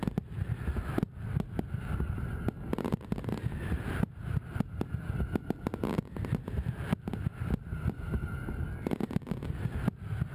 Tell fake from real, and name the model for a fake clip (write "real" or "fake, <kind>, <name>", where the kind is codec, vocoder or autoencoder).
real